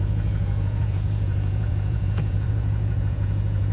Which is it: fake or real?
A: fake